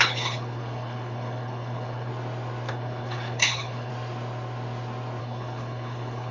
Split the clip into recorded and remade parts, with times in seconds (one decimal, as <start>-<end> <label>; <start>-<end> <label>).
0.0-2.1 remade; 2.1-2.7 recorded; 2.7-3.9 remade; 3.9-5.2 recorded; 5.2-6.3 remade